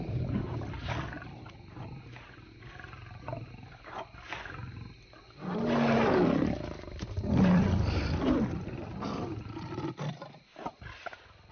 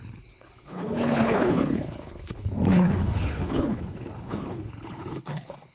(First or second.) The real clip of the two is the first